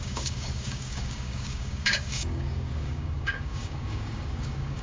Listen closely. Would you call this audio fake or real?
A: fake